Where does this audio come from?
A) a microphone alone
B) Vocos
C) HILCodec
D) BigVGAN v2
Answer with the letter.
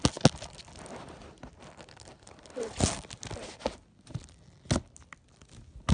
A